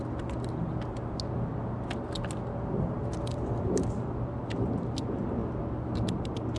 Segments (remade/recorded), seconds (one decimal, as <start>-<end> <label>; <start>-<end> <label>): 0.0-6.6 recorded